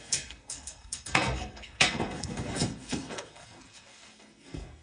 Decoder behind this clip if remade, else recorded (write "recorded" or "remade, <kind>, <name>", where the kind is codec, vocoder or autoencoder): remade, codec, SNAC